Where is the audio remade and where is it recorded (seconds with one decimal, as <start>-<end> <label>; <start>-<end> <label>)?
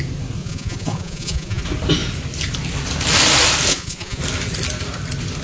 0.0-0.4 recorded; 0.4-1.6 remade; 1.6-3.7 recorded; 3.7-4.2 remade; 4.2-5.4 recorded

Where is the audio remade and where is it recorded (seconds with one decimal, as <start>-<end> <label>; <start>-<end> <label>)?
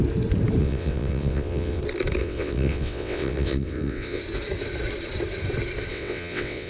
0.0-0.6 recorded; 0.6-1.8 remade; 1.8-2.2 recorded; 2.2-4.2 remade; 4.2-5.9 recorded; 5.9-6.7 remade